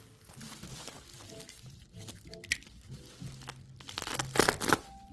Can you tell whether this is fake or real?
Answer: real